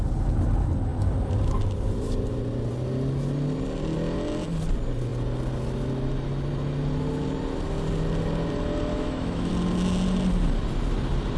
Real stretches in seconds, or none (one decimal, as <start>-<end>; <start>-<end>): 0.0-8.9; 9.5-11.4